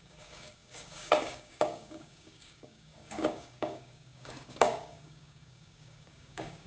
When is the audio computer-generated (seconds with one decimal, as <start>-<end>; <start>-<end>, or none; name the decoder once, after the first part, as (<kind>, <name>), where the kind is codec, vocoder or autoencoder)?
0.0-6.7 (codec, DAC)